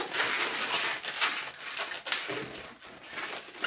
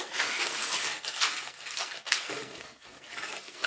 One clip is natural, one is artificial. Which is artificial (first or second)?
second